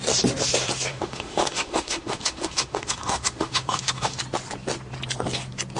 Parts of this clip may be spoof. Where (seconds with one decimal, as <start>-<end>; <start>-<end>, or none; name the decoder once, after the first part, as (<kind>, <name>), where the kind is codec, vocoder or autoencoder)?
0.9-4.2 (autoencoder, DAC-VAE)